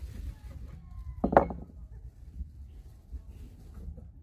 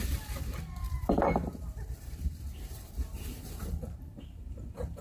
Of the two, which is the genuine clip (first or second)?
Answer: first